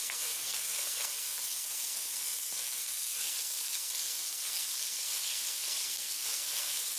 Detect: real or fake fake